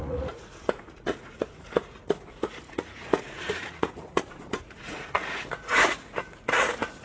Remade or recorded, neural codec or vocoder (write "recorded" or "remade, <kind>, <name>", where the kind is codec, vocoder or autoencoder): remade, vocoder, Vocos